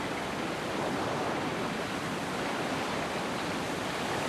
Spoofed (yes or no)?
no